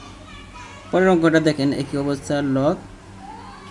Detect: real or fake real